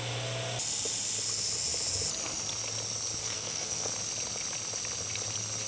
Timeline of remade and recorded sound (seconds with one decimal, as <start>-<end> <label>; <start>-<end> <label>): 0.0-3.2 recorded; 3.2-3.9 remade; 3.9-5.7 recorded